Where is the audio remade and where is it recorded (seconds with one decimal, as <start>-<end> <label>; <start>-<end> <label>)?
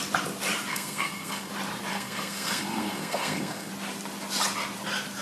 0.0-0.7 recorded; 0.7-1.5 remade; 1.5-1.9 recorded; 1.9-3.7 remade; 3.7-5.2 recorded